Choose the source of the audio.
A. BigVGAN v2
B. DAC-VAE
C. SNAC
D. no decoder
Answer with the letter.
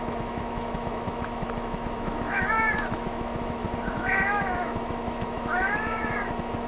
B